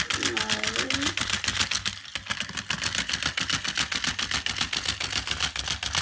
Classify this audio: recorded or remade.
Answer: recorded